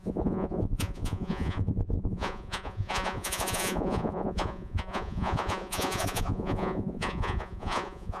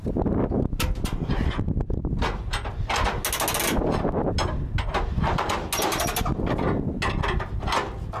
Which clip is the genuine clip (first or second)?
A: second